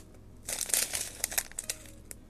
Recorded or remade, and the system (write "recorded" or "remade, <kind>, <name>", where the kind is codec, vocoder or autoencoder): recorded